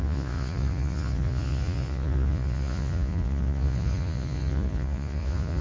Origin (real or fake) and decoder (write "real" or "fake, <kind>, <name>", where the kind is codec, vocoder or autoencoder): fake, vocoder, Vocos